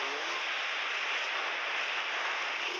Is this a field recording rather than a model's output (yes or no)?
yes